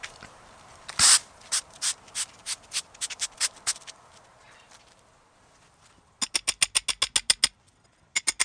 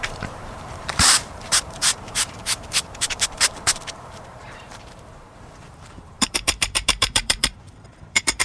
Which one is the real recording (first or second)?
first